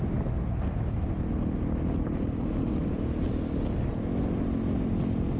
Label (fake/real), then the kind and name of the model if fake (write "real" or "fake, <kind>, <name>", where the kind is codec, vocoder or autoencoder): real